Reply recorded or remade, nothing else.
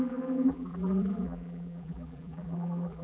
remade